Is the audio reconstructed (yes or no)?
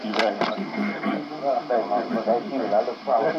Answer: no